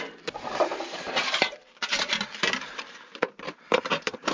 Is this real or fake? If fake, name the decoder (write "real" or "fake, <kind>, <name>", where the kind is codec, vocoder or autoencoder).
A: fake, vocoder, BigVGAN v2